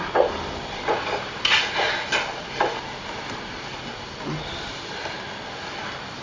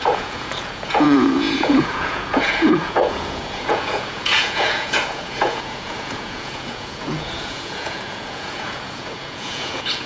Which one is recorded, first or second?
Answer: first